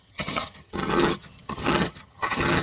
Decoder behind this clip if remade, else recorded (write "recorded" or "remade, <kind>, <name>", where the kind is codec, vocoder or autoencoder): remade, vocoder, HiFi-GAN